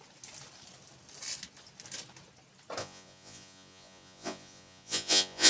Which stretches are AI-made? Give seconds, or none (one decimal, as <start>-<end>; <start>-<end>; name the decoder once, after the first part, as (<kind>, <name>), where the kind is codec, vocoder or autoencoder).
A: 2.8-5.5 (vocoder, Vocos)